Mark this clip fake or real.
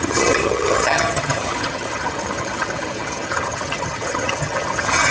fake